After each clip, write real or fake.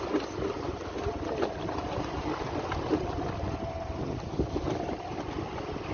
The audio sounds real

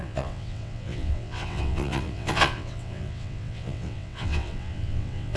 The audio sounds fake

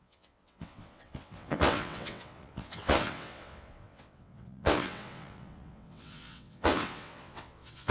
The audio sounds fake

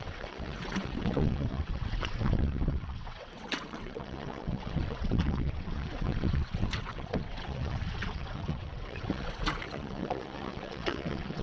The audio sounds fake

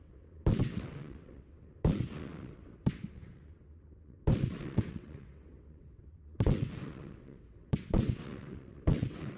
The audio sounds fake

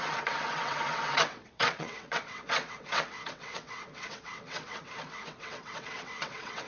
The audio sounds fake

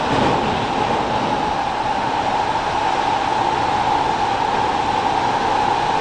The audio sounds real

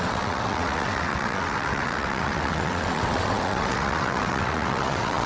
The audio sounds fake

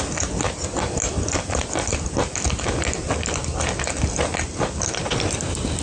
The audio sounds real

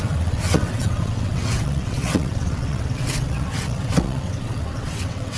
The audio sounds fake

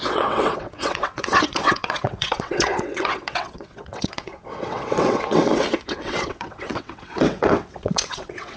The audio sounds fake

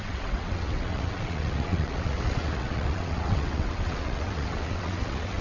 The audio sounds fake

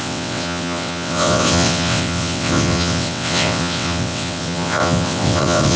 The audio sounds fake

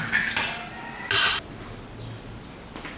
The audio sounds real